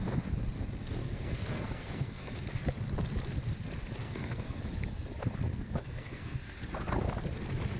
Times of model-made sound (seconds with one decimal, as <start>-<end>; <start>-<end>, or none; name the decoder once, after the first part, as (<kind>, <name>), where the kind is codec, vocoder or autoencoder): 1.0-2.3 (codec, SNAC); 4.0-4.6; 5.5-6.6